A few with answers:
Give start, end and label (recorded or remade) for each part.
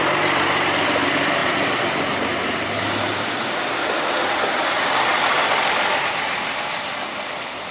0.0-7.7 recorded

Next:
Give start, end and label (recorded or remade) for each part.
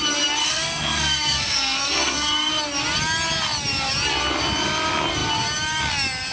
0.0-0.4 recorded; 0.4-2.5 remade; 2.5-6.3 recorded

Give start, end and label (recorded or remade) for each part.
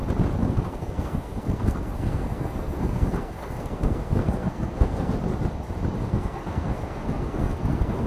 0.0-0.4 recorded; 0.4-5.1 remade; 5.1-6.0 recorded; 6.0-8.1 remade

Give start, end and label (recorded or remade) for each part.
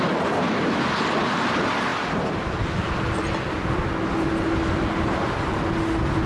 0.0-6.3 recorded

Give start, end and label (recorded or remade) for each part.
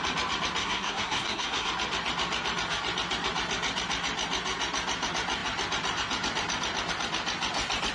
0.0-0.6 recorded; 0.6-1.7 remade; 1.7-7.9 recorded